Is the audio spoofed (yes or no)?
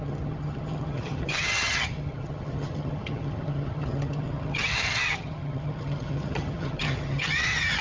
yes